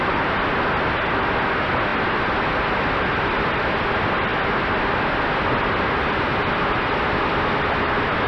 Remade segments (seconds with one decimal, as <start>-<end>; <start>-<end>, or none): none

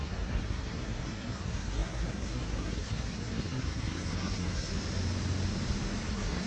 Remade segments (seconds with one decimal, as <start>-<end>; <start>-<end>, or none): 0.0-4.7; 6.1-6.5

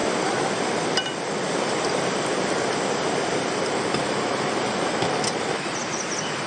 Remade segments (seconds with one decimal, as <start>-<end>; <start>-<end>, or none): none